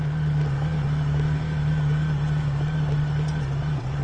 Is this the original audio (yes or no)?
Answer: yes